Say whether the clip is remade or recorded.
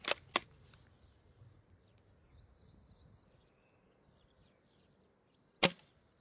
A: recorded